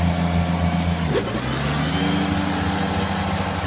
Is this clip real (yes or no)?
yes